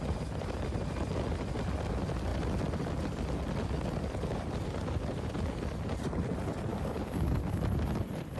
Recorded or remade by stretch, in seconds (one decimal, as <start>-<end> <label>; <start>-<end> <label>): 0.0-6.7 recorded; 6.7-7.6 remade; 7.6-8.4 recorded

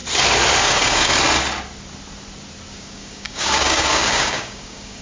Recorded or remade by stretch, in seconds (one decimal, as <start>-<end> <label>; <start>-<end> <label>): 0.0-0.6 recorded; 0.6-1.1 remade; 1.1-2.7 recorded; 2.7-5.0 remade